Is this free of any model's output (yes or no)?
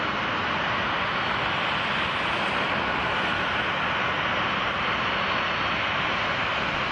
yes